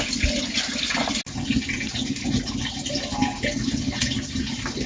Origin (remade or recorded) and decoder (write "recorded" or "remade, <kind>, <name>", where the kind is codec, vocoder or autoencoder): recorded